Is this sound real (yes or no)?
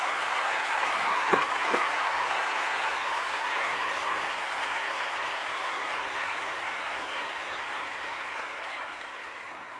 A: no